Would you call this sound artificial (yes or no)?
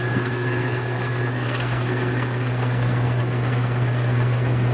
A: yes